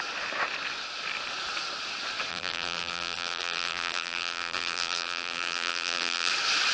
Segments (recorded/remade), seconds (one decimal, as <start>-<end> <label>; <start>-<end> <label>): 0.0-2.3 recorded; 2.3-6.3 remade; 6.3-6.7 recorded